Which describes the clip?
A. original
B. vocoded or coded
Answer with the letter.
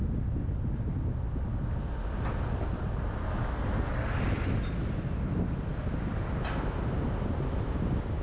A